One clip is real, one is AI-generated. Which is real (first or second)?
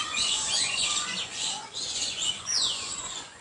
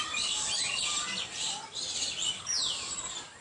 second